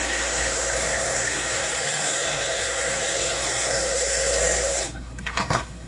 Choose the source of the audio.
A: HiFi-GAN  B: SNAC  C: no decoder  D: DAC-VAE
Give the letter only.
B